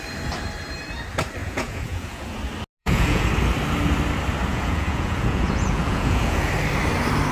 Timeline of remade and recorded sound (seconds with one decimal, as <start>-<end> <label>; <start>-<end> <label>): 0.0-1.4 recorded; 1.4-2.4 remade; 2.4-2.8 recorded; 2.8-3.3 remade; 3.3-4.5 recorded; 4.5-6.5 remade; 6.5-7.3 recorded